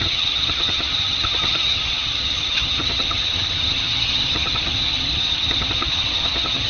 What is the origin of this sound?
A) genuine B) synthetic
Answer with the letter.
B